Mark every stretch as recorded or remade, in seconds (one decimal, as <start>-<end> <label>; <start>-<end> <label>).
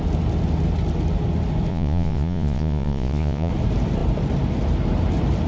0.0-1.7 recorded; 1.7-3.5 remade; 3.5-5.5 recorded